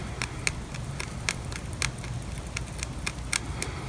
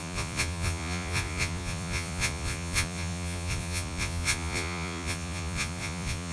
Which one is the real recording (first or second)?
first